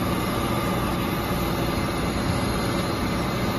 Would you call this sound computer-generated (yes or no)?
no